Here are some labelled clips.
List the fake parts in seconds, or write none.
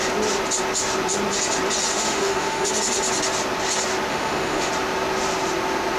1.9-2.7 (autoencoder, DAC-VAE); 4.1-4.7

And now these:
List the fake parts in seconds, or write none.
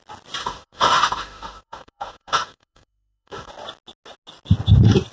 0.4-3.5 (autoencoder, DAC-VAE)